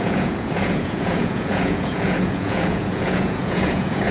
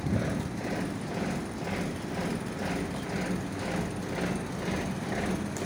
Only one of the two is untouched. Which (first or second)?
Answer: second